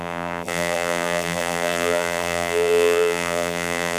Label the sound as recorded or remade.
remade